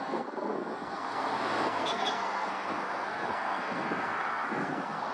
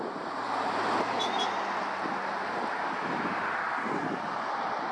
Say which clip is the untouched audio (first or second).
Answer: second